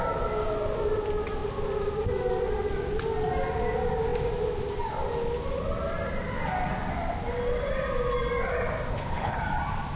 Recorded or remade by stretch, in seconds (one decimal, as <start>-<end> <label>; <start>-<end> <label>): 0.0-8.9 recorded; 8.9-9.4 remade; 9.4-10.0 recorded